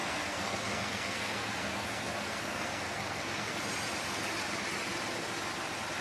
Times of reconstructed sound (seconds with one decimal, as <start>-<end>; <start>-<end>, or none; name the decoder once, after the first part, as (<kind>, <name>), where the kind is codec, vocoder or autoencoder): 0.0-3.6 (codec, SNAC)